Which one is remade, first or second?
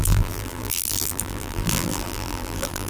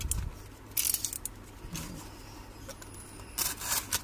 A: first